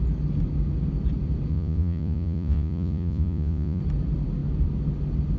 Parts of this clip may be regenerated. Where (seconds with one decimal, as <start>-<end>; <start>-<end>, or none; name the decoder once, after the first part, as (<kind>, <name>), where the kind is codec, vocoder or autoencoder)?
1.5-3.8 (vocoder, Vocos)